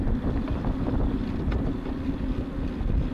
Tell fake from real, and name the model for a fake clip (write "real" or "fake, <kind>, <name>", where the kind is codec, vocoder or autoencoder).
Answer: real